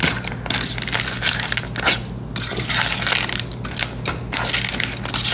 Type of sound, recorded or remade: recorded